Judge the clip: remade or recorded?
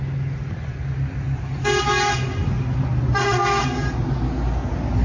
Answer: recorded